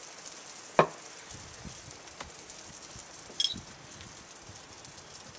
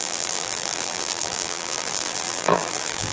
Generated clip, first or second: second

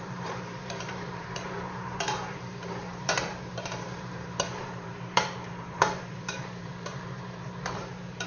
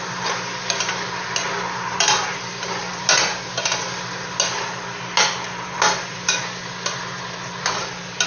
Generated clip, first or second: first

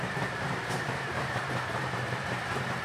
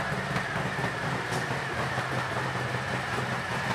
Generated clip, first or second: first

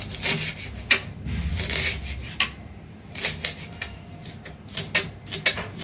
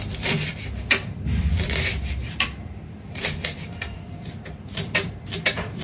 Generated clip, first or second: second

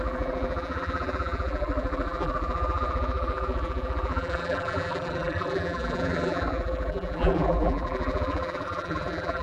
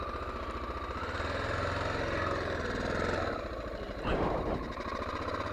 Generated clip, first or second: first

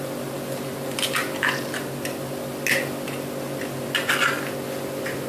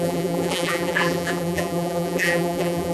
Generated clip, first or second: second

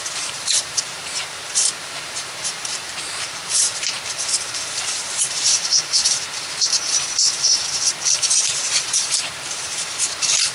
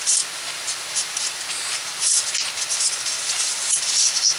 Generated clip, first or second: first